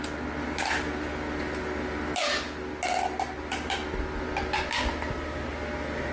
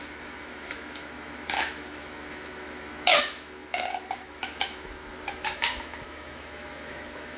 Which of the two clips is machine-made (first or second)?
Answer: second